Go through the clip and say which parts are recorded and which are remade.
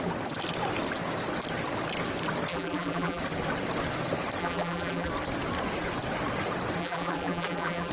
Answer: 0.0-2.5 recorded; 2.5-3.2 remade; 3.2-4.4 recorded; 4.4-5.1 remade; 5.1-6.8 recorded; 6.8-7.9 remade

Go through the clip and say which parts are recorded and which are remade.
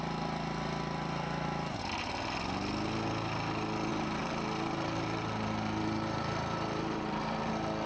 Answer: 0.0-3.9 recorded; 3.9-7.5 remade; 7.5-7.9 recorded